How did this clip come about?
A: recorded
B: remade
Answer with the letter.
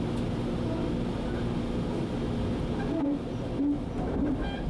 A